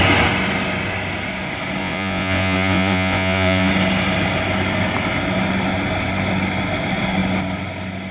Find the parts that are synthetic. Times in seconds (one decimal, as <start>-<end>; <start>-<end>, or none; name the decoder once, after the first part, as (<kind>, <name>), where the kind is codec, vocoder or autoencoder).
1.8-3.7 (vocoder, Vocos)